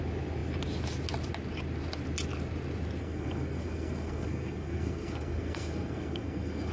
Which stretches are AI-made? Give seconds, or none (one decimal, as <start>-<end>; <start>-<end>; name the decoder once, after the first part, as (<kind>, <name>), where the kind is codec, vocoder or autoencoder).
3.0-6.7 (codec, SNAC)